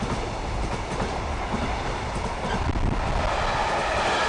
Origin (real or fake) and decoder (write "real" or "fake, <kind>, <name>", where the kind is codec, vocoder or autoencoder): real